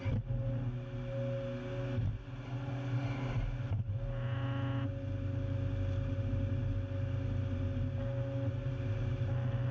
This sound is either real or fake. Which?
real